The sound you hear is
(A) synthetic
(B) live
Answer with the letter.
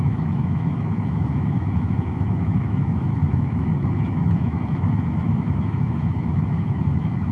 A